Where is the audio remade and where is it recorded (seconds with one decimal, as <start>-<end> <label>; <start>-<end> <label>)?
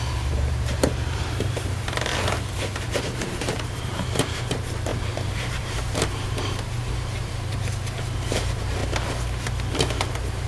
0.0-8.8 remade; 8.8-10.1 recorded; 10.1-10.5 remade